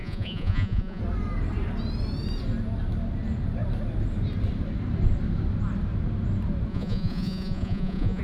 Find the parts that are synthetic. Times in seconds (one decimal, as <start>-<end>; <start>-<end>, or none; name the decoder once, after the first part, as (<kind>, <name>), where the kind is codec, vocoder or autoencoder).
0.0-1.0 (vocoder, Vocos); 6.7-8.2